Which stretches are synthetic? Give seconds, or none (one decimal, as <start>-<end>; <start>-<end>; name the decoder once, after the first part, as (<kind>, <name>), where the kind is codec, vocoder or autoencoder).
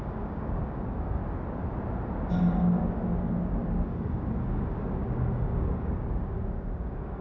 0.0-1.2 (codec, DAC); 2.3-7.2